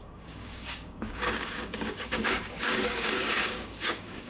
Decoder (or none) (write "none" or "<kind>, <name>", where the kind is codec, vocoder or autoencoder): codec, DAC